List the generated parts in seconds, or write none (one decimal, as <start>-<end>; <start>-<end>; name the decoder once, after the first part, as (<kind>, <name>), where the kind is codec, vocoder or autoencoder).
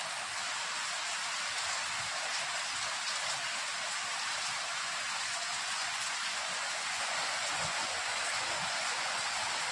4.7-9.2 (vocoder, Vocos)